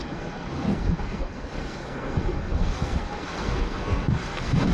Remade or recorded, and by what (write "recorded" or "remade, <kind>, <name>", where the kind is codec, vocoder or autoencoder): remade, codec, SNAC